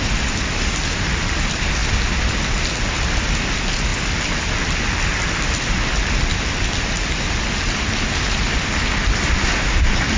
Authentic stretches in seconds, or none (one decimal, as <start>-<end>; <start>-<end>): 0.0-10.2